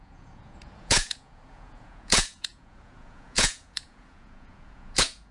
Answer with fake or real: fake